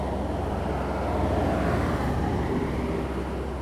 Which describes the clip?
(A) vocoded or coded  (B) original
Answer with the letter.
B